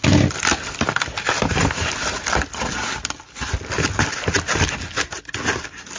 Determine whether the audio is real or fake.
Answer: real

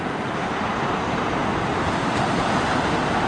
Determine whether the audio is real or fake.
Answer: real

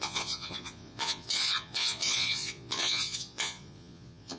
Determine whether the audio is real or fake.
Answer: fake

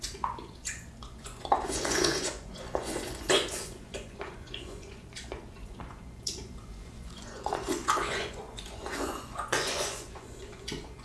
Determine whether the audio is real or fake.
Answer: fake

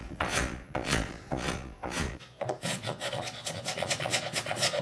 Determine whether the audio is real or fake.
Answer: fake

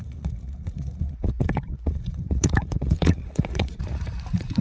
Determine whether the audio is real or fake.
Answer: fake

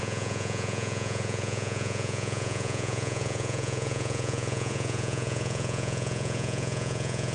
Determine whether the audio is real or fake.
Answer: fake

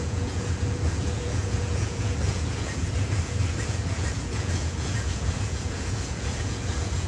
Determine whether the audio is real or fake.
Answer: fake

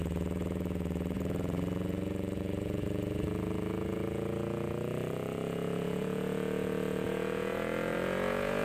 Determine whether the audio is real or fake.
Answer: fake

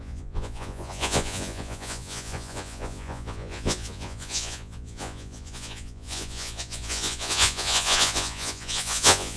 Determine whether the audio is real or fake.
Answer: fake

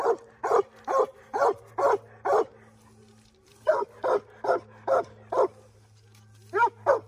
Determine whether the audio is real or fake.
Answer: real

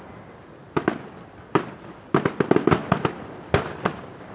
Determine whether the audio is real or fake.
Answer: real